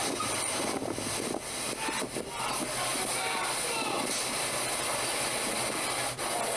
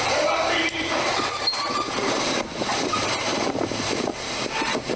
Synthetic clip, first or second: second